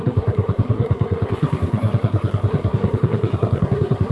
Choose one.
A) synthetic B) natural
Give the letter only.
A